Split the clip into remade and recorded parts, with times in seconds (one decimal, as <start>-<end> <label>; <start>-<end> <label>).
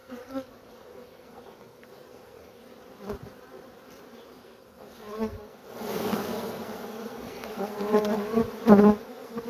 0.0-2.6 remade; 2.6-4.4 recorded; 4.4-8.4 remade; 8.4-9.0 recorded; 9.0-9.5 remade